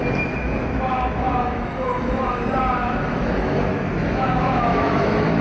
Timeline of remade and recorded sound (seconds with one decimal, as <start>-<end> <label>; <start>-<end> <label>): 0.0-0.4 recorded; 0.4-2.4 remade; 2.4-2.8 recorded; 2.8-5.4 remade